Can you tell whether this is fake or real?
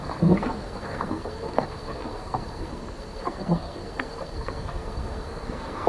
fake